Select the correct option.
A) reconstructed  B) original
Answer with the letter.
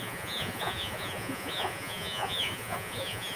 A